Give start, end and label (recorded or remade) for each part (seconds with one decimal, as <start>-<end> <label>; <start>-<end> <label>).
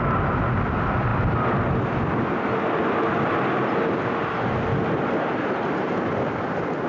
0.0-6.9 recorded